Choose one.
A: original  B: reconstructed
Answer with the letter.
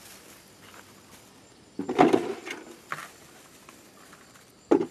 B